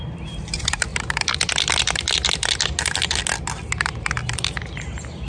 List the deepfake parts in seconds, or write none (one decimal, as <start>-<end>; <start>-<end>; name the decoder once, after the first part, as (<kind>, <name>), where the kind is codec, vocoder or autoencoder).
none